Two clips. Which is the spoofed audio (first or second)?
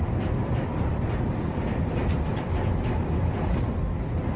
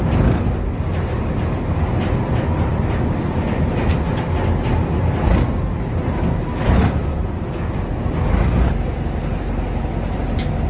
first